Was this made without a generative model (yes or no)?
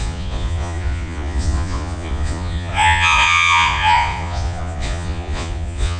no